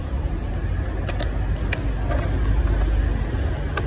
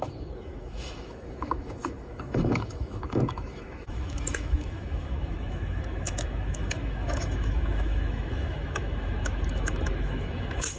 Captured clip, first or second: first